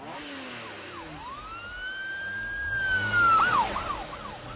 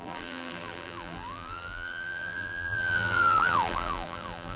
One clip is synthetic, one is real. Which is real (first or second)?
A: first